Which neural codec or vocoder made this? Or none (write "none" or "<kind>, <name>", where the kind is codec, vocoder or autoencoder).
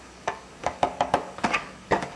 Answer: codec, DAC